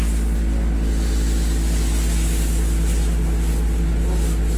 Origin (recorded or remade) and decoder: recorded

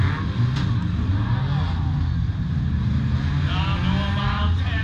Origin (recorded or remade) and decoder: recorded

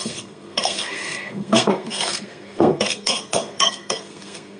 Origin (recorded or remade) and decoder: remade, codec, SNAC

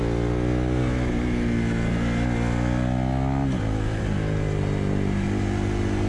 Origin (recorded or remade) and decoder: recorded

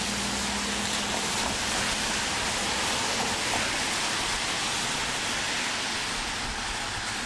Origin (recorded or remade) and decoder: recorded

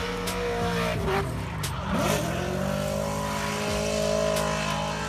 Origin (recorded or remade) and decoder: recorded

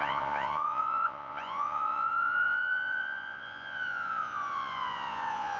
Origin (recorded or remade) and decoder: remade, vocoder, Vocos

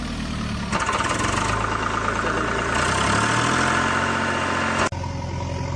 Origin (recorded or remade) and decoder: recorded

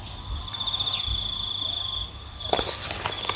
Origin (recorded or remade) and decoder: recorded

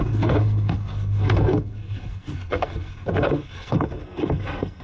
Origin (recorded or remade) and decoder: remade, codec, SNAC